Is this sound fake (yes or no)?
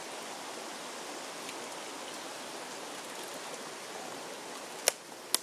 no